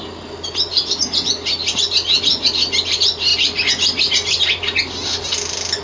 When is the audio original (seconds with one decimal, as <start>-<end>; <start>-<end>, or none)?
0.0-5.8